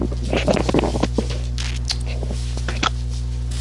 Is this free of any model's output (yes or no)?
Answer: yes